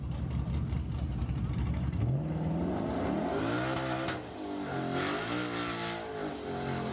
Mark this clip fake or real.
real